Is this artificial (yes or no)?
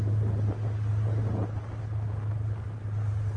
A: no